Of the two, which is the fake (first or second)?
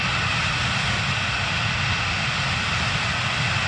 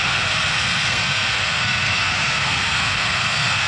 second